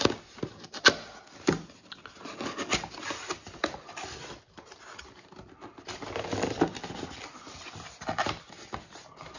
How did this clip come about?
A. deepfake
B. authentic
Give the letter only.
B